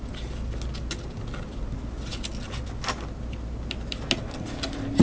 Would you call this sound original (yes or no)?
yes